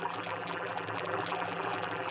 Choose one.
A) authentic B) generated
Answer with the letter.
B